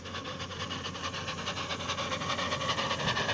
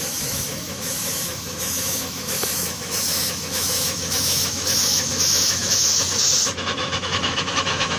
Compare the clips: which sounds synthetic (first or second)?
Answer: second